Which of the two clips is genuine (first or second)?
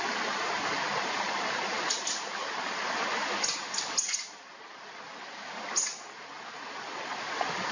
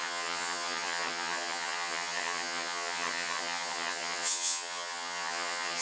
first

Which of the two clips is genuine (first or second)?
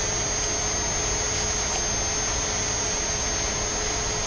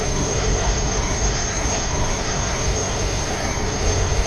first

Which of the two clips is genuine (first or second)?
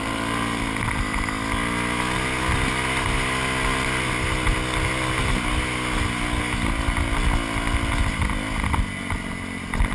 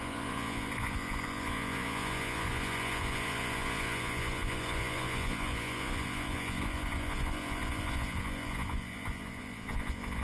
first